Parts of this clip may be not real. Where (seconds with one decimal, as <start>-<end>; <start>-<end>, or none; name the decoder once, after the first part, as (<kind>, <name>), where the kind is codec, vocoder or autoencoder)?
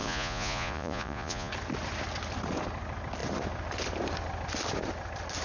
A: 0.0-1.5 (vocoder, Vocos)